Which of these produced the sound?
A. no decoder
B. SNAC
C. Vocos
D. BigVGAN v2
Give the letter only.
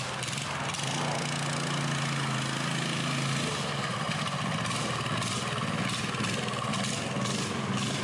A